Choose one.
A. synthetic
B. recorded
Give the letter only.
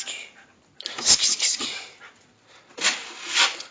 B